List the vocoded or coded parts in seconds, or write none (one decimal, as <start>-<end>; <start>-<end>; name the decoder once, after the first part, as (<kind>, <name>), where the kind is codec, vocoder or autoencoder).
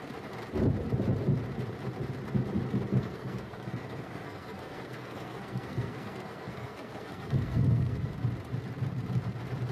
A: 2.9-8.1 (codec, SNAC)